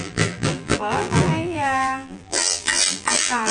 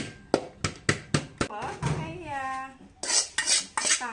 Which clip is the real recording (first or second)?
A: second